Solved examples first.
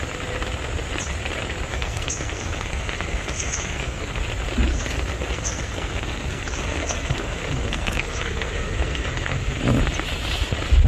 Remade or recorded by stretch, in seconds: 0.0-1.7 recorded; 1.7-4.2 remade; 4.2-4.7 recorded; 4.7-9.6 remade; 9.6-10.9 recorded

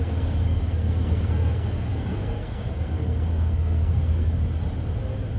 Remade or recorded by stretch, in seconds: 0.0-4.3 remade; 4.3-5.4 recorded

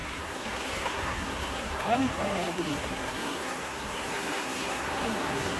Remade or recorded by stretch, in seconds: 0.0-5.6 remade

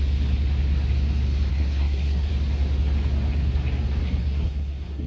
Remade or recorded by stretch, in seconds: 0.0-1.5 recorded; 1.5-2.3 remade; 2.3-4.0 recorded; 4.0-5.1 remade